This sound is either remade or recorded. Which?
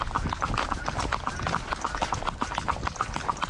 recorded